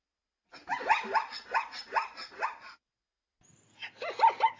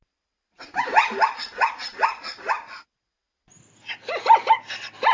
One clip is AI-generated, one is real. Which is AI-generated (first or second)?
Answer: second